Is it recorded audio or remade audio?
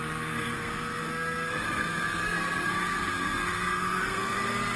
remade